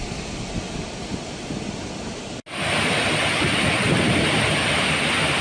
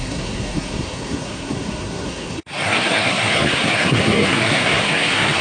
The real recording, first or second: first